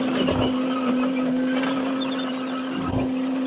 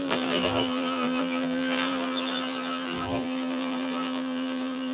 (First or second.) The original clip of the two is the first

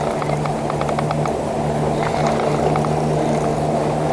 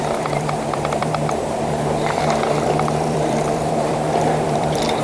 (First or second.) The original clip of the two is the first